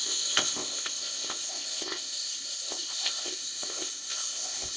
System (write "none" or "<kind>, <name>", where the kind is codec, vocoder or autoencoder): codec, ZipCodec